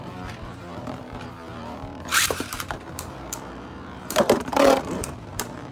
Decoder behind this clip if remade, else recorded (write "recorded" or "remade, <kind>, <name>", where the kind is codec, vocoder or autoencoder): remade, vocoder, BigVGAN v2